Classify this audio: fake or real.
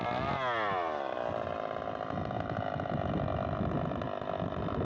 real